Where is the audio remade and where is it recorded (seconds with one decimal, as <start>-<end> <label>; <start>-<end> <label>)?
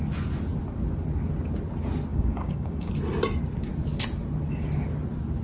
0.0-2.1 recorded; 2.1-2.9 remade; 2.9-5.4 recorded